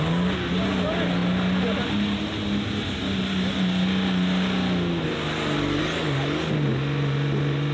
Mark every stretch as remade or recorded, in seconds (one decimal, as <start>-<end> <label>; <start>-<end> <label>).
0.0-7.7 recorded